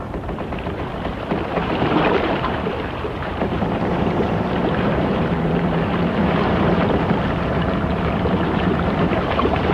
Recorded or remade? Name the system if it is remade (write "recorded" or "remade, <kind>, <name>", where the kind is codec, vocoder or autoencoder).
remade, vocoder, BigVGAN v2